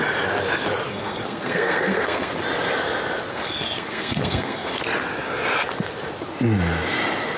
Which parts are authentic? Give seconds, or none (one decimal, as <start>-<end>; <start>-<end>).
0.0-0.9; 2.3-3.3; 4.7-7.4